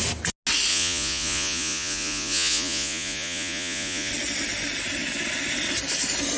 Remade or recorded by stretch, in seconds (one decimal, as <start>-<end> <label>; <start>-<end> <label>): 0.0-0.7 recorded; 0.7-4.1 remade; 4.1-6.4 recorded